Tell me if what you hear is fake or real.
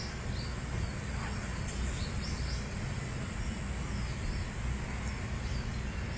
real